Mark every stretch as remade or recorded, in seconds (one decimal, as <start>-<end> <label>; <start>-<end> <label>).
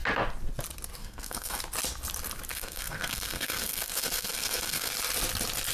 0.0-1.0 recorded; 1.0-1.6 remade; 1.6-2.5 recorded; 2.5-4.9 remade; 4.9-5.7 recorded